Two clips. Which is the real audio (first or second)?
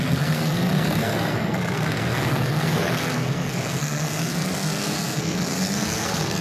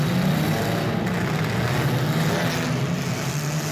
second